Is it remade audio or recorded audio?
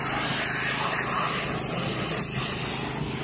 recorded